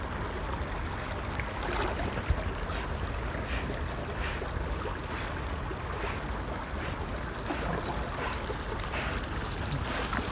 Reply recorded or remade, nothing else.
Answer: recorded